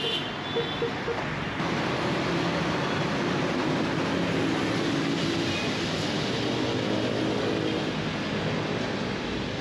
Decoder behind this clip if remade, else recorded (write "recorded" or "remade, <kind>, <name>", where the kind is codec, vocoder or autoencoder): recorded